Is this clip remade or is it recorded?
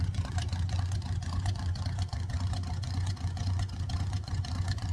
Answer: remade